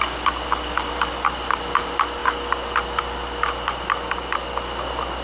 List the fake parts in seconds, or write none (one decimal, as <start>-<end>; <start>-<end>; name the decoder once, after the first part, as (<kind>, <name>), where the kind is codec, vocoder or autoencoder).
none